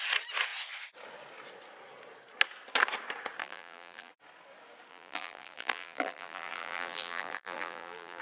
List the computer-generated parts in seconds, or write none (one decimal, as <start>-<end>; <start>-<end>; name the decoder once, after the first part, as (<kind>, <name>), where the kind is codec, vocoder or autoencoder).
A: 3.4-4.1 (vocoder, BigVGAN v2); 4.9-8.2